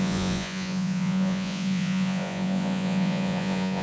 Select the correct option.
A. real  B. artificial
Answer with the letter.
B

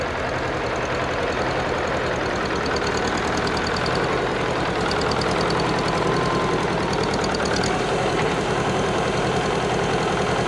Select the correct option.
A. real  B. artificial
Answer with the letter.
A